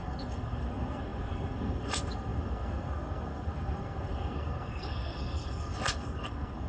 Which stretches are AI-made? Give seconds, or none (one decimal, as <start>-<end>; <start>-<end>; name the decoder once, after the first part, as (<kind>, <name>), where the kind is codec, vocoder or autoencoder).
0.0-6.7 (codec, SNAC)